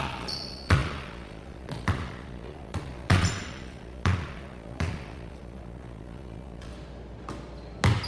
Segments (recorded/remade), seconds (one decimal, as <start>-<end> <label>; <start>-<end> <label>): 0.0-6.7 remade; 6.7-8.1 recorded